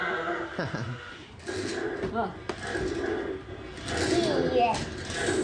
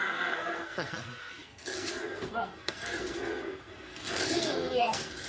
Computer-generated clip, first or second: second